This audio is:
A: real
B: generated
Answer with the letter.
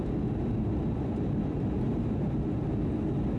A